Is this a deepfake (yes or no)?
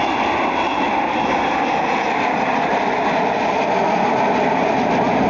yes